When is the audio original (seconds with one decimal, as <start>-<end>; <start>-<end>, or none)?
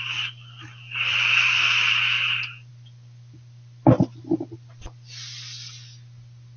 0.0-6.6